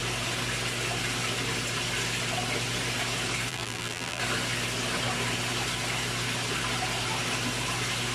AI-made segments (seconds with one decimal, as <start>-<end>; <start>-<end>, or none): 3.5-4.2